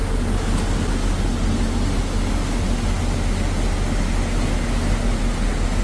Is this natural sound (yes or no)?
yes